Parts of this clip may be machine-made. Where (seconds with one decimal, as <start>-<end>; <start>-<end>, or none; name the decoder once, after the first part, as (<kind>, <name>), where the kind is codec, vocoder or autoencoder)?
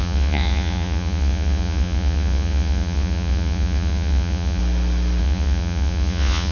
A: 0.0-4.6 (vocoder, Vocos); 5.2-6.5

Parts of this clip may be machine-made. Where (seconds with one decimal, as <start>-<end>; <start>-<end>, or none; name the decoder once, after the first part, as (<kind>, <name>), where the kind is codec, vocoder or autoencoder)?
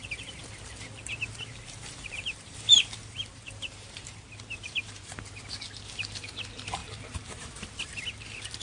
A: 1.5-5.1 (vocoder, BigVGAN v2); 6.8-7.5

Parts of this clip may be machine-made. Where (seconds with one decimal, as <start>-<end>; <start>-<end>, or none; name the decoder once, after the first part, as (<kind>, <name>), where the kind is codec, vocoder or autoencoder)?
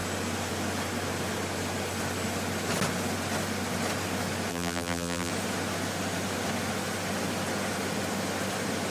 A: 4.5-5.3 (vocoder, BigVGAN v2)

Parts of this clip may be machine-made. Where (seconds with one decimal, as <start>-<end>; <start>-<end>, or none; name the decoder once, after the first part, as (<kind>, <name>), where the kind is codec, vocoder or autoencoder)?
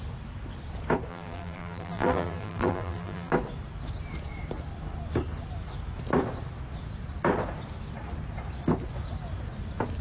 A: 1.1-3.3 (vocoder, BigVGAN v2)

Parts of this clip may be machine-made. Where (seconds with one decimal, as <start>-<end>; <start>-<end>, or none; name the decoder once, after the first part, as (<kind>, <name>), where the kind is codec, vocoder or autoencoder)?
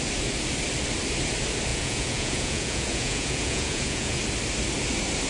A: 1.7-4.2 (vocoder, Vocos)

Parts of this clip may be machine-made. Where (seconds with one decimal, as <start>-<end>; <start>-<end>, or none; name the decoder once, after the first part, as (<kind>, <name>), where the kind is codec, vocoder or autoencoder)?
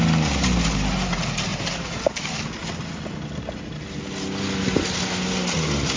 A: none